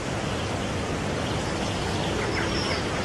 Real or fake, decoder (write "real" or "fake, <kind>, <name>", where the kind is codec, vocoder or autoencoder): real